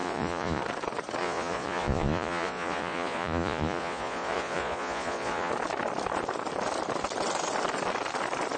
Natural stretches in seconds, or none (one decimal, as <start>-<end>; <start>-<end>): 0.6-1.2; 5.5-8.6